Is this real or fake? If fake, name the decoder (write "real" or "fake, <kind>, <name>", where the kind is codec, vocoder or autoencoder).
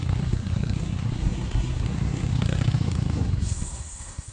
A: fake, codec, SNAC